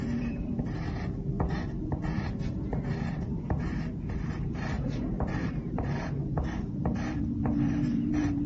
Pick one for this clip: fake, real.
fake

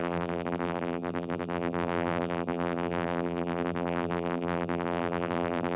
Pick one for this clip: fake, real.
fake